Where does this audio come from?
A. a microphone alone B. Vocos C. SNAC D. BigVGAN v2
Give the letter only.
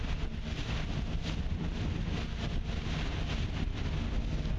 A